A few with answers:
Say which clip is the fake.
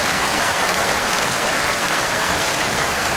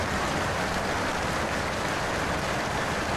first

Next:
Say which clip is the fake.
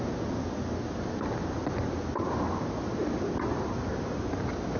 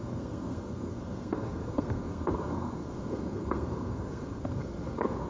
second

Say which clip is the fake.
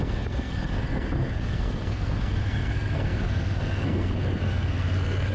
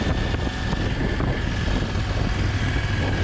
first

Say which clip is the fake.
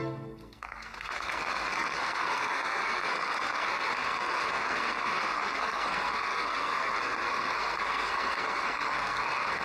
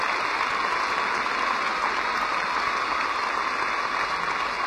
first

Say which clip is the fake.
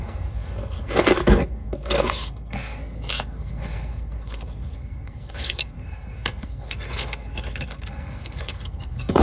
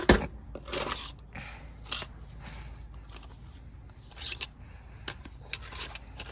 first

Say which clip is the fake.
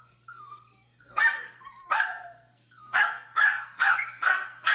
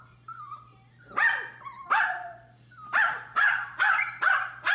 first